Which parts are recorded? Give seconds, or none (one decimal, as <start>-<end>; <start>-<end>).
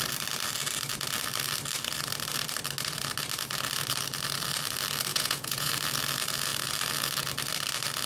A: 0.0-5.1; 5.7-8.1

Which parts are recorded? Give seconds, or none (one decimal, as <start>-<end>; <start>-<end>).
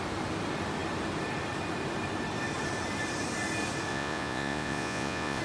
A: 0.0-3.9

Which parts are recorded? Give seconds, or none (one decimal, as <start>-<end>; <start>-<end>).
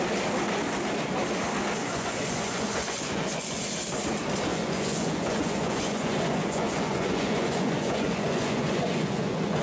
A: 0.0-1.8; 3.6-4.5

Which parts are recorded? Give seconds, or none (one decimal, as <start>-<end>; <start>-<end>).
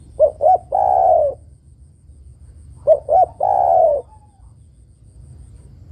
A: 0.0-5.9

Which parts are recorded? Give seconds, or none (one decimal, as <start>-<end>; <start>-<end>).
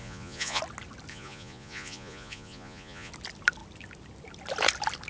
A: 0.6-1.1; 3.1-5.1